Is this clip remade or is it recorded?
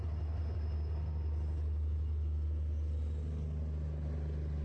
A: recorded